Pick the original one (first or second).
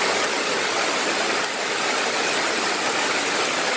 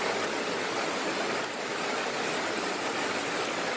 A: second